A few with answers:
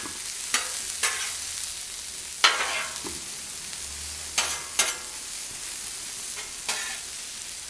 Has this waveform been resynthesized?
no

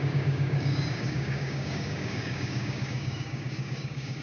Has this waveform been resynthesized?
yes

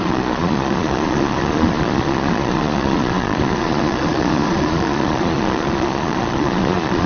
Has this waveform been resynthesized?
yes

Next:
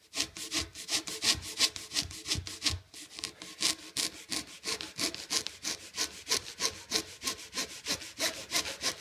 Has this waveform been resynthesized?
no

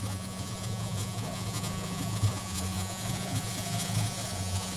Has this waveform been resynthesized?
yes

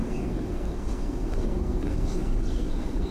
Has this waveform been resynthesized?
yes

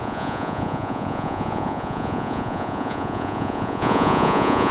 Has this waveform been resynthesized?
yes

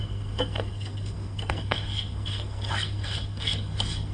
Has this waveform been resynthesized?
yes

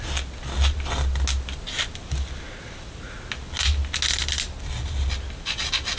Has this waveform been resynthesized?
no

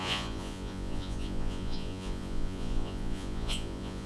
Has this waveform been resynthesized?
yes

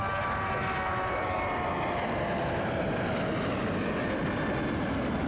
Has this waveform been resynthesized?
no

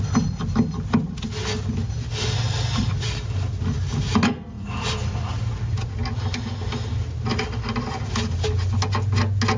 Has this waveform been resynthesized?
no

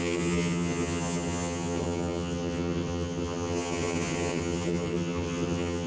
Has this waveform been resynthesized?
yes